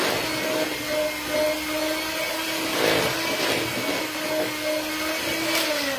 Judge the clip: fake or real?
real